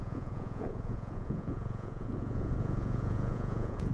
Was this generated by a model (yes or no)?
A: yes